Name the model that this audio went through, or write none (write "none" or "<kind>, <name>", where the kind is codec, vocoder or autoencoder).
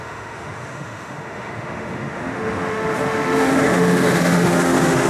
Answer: autoencoder, DAC-VAE